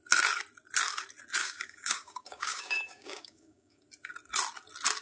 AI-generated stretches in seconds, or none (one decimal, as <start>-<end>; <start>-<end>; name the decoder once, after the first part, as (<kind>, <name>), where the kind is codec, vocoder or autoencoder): 1.4-3.8 (codec, DAC)